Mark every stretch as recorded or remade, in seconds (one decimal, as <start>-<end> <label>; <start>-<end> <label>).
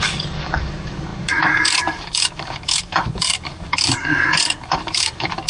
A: 0.0-5.5 remade